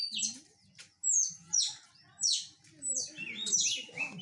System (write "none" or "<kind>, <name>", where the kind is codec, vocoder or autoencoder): none